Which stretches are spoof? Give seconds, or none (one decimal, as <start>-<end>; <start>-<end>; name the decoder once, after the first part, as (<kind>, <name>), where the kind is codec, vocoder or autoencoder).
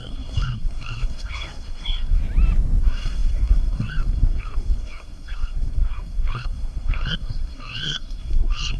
0.0-2.2 (codec, SNAC); 2.8-8.8